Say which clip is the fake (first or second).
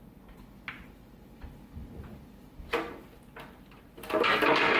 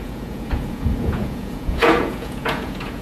second